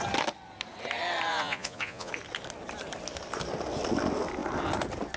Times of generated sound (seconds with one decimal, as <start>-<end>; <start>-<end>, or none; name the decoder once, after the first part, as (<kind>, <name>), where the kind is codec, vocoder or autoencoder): 1.3-2.1 (vocoder, Vocos)